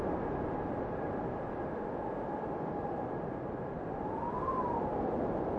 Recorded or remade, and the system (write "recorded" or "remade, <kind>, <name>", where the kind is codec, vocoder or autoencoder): recorded